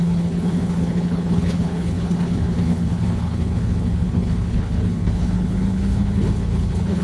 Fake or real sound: fake